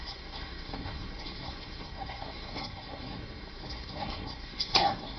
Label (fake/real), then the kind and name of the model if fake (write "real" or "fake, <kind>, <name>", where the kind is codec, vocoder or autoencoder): fake, codec, SNAC